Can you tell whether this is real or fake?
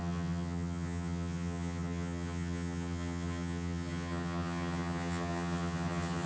fake